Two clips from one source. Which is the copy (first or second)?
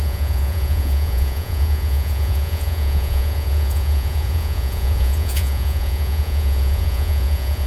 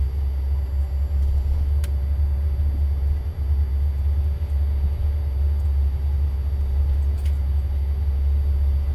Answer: first